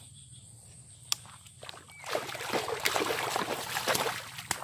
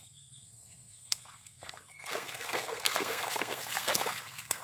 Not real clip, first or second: second